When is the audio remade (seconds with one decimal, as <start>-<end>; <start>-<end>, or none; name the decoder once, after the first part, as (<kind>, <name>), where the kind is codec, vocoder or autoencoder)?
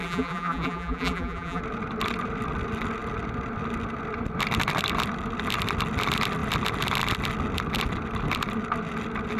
0.0-1.6 (vocoder, BigVGAN v2)